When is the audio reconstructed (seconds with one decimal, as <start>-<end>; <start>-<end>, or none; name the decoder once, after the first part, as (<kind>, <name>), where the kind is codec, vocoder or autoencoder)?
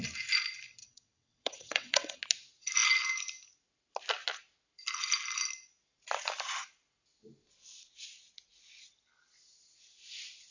0.8-2.2 (vocoder, WaveNeXt)